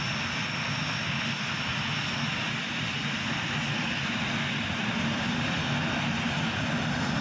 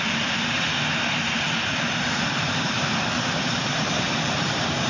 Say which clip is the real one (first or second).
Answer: first